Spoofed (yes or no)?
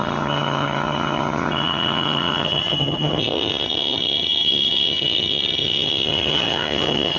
yes